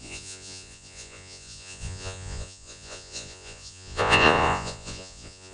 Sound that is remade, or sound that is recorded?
remade